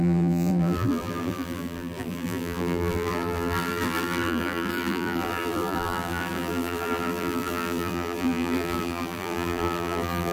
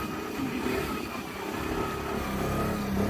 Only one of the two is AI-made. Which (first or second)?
first